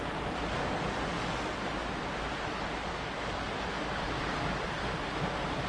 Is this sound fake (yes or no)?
no